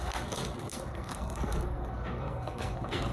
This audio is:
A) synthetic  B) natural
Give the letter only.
A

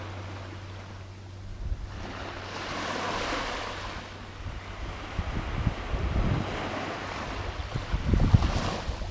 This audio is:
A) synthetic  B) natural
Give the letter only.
B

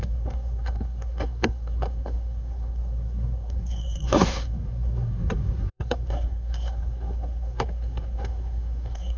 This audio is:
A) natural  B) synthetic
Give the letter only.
B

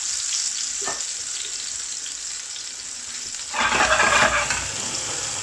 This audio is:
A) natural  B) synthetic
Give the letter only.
A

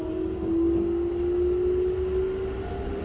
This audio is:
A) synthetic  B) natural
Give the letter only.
B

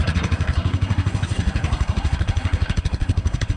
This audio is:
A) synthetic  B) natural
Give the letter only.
A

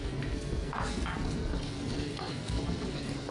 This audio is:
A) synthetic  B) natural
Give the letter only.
A